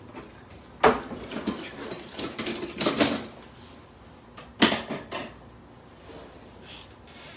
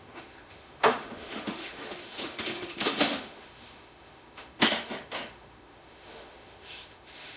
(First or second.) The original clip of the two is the first